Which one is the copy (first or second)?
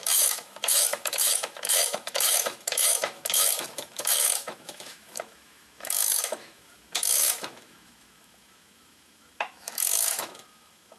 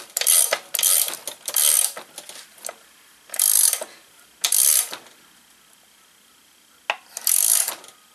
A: first